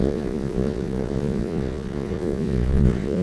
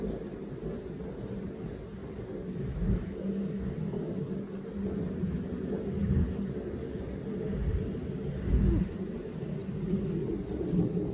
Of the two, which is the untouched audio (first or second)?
second